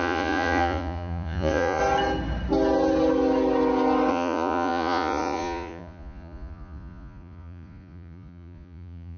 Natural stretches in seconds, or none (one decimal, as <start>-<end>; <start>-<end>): 1.8-4.1